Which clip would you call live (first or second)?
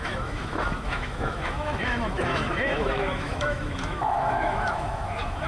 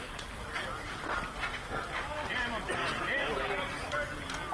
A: second